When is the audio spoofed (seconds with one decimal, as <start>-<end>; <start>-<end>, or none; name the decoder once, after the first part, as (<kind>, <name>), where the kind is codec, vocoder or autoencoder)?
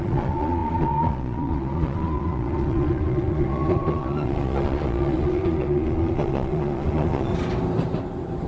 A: 0.0-7.3 (vocoder, Vocos)